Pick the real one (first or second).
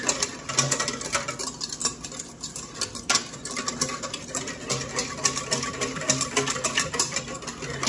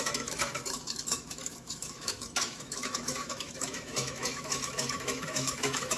first